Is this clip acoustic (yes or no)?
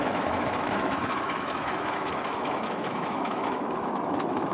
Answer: no